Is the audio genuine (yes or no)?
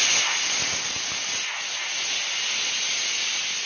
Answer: yes